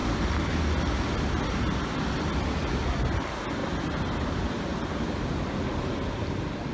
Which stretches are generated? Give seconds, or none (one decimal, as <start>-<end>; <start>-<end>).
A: none